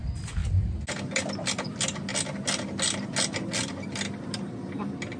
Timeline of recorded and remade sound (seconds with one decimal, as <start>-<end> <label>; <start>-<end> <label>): 0.0-5.2 recorded